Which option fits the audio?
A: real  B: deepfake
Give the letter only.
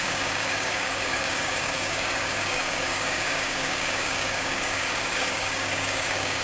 B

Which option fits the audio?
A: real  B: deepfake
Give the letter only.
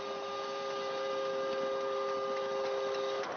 A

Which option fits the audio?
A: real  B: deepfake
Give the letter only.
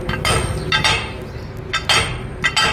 A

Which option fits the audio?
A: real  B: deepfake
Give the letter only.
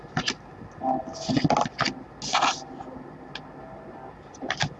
A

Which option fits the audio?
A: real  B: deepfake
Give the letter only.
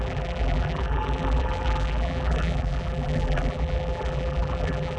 B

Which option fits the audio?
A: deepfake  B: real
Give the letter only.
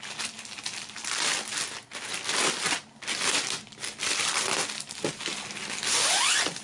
B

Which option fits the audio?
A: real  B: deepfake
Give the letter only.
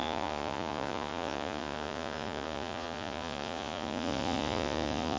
B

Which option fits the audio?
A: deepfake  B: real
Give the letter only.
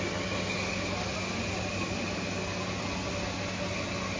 B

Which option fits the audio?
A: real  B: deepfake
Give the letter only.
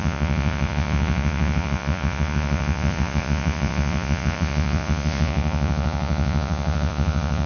B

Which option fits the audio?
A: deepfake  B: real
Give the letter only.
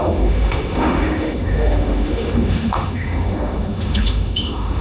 A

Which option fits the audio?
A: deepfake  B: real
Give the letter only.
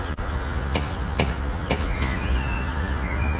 A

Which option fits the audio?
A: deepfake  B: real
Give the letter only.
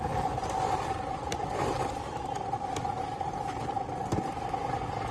A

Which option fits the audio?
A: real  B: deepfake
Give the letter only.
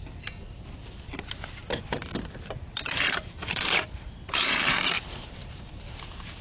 B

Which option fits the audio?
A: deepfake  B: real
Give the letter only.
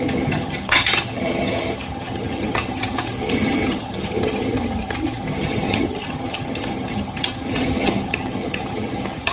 A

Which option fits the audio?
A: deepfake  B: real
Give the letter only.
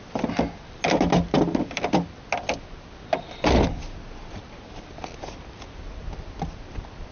B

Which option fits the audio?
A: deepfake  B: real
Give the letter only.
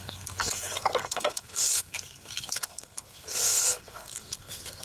A